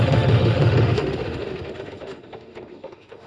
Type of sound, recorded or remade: remade